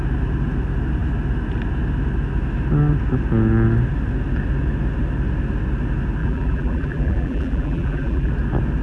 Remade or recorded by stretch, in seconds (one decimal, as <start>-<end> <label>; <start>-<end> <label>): 0.0-6.2 recorded; 6.2-8.3 remade; 8.3-8.8 recorded